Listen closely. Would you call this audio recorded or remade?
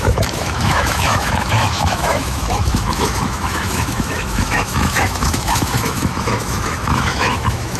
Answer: remade